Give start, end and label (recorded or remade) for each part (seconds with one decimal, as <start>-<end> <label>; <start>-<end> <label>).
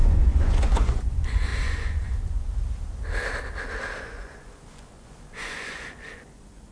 0.0-2.5 remade; 2.5-4.0 recorded; 4.0-6.7 remade